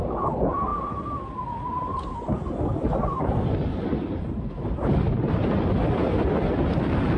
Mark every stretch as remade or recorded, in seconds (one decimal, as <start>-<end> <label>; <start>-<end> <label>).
0.0-3.7 recorded; 3.7-5.6 remade; 5.6-7.2 recorded